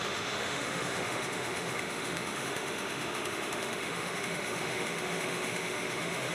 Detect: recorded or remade remade